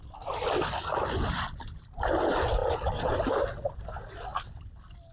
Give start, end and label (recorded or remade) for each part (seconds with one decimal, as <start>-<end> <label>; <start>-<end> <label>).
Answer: 0.0-5.1 recorded